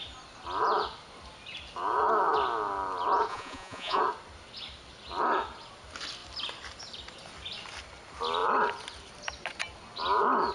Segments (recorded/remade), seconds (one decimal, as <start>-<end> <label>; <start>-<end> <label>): 0.0-3.3 recorded; 3.3-4.0 remade; 4.0-10.5 recorded